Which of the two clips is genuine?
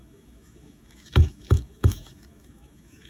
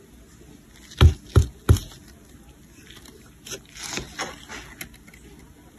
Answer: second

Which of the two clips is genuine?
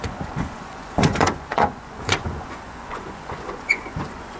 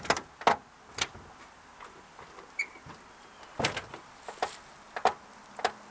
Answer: second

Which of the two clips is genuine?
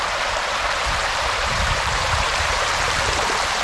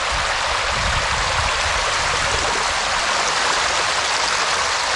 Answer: second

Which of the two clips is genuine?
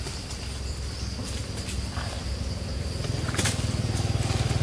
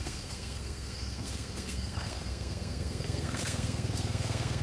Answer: first